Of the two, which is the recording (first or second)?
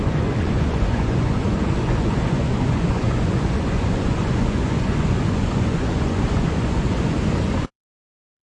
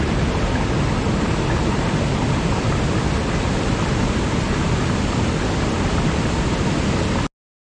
second